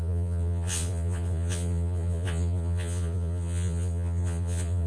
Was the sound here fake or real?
fake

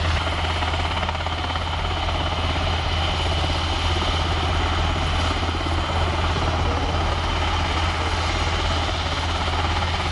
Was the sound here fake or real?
real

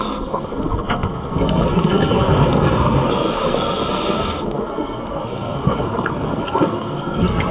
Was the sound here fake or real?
fake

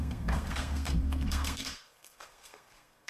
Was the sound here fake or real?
fake